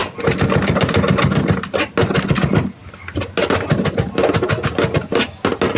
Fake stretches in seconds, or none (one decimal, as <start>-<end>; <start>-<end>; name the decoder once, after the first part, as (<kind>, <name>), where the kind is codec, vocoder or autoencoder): none